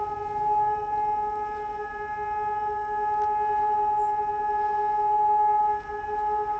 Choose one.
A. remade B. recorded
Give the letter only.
B